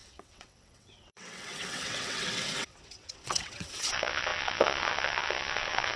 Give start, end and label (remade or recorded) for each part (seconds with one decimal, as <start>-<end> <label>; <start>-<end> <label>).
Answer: 0.0-6.0 remade